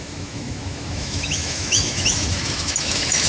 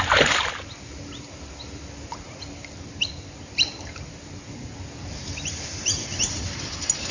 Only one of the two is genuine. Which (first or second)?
second